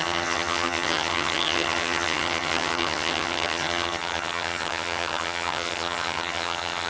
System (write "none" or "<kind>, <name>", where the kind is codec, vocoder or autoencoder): vocoder, HiFi-GAN